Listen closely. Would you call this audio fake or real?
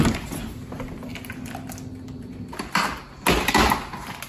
real